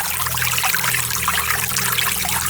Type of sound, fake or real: real